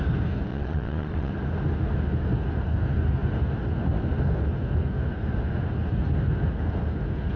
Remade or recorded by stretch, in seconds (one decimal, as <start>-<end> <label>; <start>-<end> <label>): 0.0-0.5 recorded; 0.5-1.3 remade; 1.3-7.4 recorded